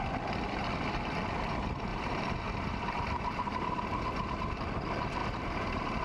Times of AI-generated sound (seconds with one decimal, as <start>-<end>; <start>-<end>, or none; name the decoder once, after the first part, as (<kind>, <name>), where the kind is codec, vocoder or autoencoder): 1.9-4.3 (vocoder, BigVGAN v2); 5.2-6.0